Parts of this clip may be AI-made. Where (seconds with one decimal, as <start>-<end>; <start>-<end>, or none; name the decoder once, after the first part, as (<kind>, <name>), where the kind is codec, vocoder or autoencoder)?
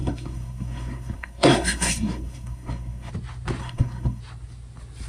0.0-3.1 (codec, SNAC); 3.6-4.2